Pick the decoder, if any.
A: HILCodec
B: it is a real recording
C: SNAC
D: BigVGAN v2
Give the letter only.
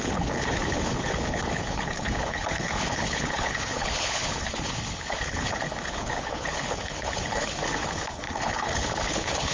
A